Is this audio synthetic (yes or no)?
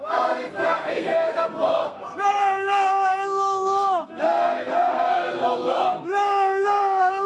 yes